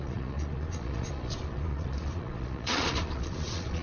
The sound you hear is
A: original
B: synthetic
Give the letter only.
B